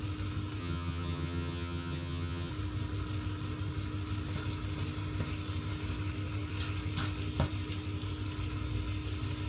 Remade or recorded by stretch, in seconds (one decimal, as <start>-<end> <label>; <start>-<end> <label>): 0.0-0.6 recorded; 0.6-2.5 remade; 2.5-9.5 recorded